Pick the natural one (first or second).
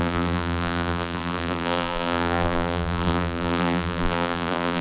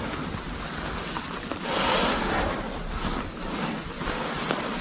second